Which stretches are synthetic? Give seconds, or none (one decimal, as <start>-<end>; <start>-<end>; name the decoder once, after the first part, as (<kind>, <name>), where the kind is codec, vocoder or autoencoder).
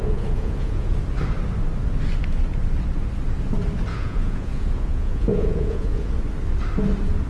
0.0-0.9 (vocoder, Vocos); 3.9-6.1